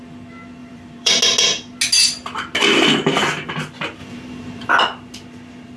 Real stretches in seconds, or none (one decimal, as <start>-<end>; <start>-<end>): 0.0-0.6; 1.2-4.0; 4.7-5.8